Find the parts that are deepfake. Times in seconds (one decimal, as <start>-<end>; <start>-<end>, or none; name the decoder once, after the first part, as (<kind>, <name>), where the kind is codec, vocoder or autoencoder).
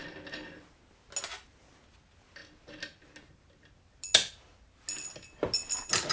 none